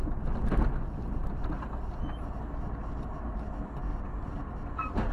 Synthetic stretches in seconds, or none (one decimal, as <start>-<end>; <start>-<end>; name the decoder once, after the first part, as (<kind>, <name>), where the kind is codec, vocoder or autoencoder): none